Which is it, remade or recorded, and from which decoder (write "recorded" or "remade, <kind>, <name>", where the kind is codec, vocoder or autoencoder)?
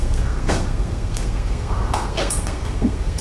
remade, codec, SNAC